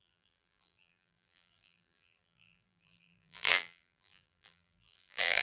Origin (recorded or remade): remade